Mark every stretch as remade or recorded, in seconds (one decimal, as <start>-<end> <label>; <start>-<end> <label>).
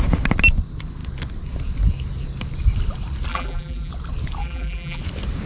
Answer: 0.0-3.3 recorded; 3.3-3.9 remade; 3.9-4.4 recorded; 4.4-5.0 remade; 5.0-5.5 recorded